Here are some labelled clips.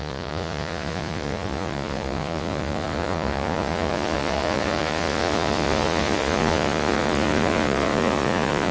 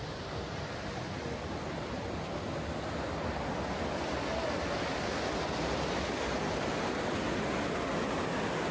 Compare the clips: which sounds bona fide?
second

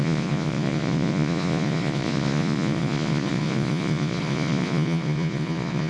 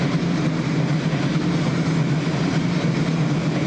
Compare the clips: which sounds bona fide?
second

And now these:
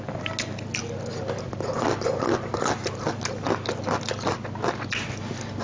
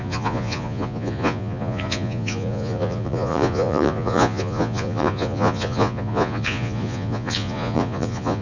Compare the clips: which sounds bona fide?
first